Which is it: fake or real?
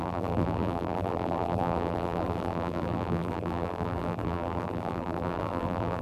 fake